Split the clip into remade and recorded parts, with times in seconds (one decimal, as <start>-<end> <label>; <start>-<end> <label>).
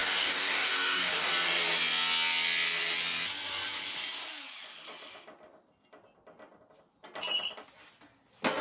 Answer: 0.0-1.3 remade; 1.3-8.6 recorded